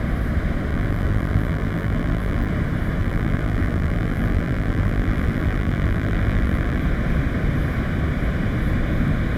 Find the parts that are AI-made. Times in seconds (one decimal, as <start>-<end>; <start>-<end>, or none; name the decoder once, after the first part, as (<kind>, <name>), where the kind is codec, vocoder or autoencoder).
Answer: 0.7-2.5 (vocoder, BigVGAN v2); 3.0-6.8